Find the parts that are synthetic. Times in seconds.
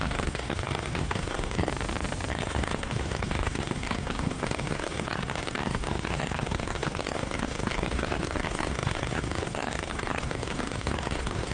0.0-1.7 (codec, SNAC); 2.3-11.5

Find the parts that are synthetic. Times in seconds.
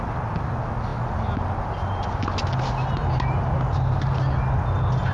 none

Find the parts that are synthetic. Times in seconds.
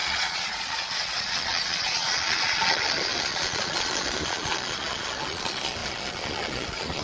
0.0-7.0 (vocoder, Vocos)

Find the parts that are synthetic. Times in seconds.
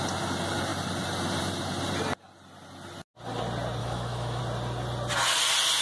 3.8-4.4 (autoencoder, DAC-VAE)